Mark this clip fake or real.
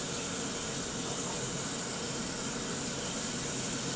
real